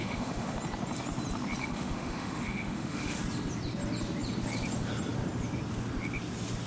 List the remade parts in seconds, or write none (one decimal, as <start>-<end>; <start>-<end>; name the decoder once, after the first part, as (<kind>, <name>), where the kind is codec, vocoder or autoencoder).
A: 0.0-0.6 (autoencoder, DAC-VAE); 1.6-3.2